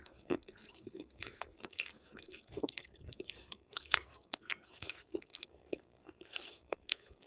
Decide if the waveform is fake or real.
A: fake